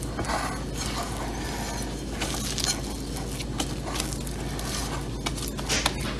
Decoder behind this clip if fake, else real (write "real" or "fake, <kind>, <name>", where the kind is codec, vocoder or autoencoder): real